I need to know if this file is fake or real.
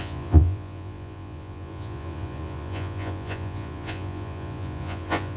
fake